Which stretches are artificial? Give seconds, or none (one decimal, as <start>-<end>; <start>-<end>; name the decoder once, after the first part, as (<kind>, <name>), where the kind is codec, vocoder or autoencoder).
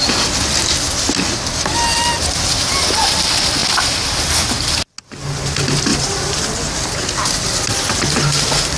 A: none